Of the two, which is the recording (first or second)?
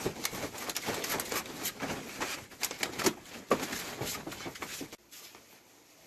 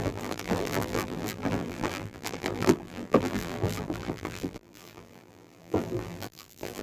first